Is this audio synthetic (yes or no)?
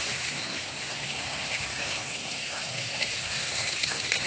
yes